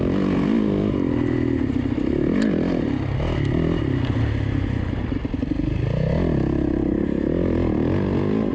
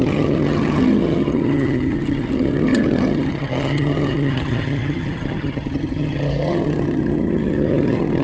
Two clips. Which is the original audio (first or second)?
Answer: first